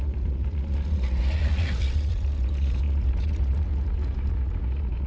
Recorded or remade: remade